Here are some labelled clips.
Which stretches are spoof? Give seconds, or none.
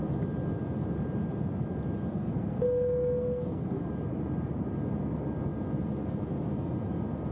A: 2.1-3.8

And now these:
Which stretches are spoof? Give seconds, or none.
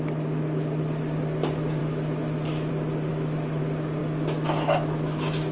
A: 1.8-2.7; 3.1-3.6; 4.0-5.5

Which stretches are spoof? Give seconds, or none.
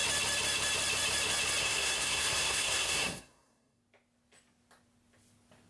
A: 1.6-3.8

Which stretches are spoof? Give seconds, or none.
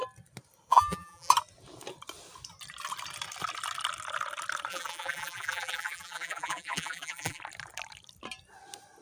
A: 0.7-1.3; 4.7-7.4